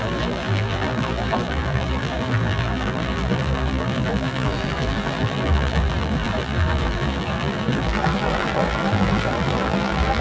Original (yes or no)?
no